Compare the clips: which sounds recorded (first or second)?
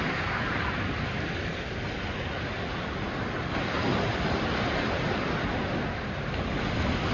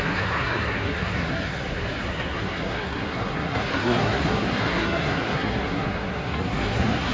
first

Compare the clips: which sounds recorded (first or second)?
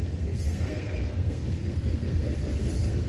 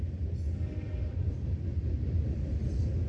second